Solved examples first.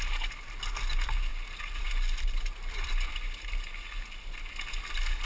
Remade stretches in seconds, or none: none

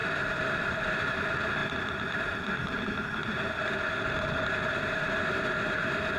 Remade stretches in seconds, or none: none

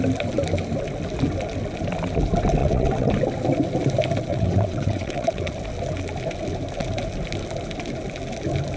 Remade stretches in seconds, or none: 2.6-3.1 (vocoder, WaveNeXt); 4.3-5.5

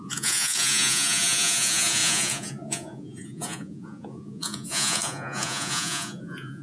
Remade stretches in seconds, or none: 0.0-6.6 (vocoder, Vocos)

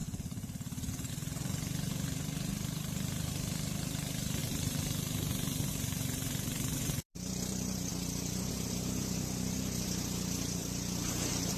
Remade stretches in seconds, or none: 1.1-11.6 (vocoder, BigVGAN v2)

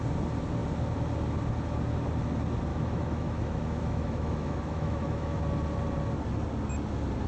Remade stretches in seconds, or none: 2.7-5.4 (autoencoder, DAC-VAE)

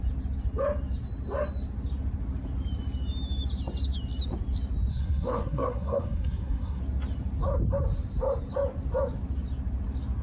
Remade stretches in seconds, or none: 4.9-6.8 (codec, SNAC)

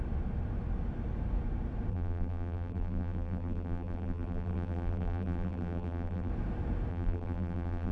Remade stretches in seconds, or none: 1.9-6.3 (vocoder, BigVGAN v2); 6.9-7.9